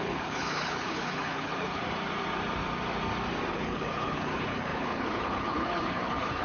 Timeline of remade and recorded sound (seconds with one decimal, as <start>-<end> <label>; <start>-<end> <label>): 0.0-1.8 remade; 1.8-3.5 recorded; 3.5-6.4 remade

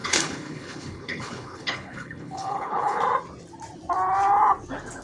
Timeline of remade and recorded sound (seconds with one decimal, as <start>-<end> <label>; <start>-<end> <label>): 0.0-3.0 remade; 3.0-5.0 recorded

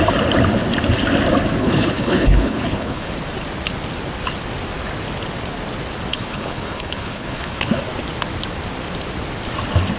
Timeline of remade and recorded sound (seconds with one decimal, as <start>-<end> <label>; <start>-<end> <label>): 0.0-1.6 recorded; 1.6-3.1 remade; 3.1-6.1 recorded; 6.1-7.8 remade; 7.8-10.0 recorded

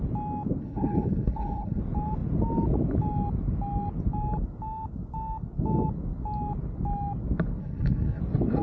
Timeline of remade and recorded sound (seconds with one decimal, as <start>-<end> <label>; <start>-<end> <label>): 0.0-0.6 recorded; 0.6-1.8 remade; 1.8-7.6 recorded; 7.6-8.2 remade; 8.2-8.6 recorded